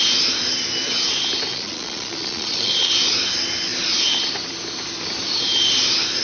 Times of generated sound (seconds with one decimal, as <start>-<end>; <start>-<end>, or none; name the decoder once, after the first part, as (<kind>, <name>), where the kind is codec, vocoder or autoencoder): 1.5-2.9 (vocoder, Vocos)